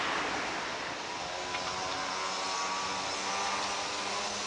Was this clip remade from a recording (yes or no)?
no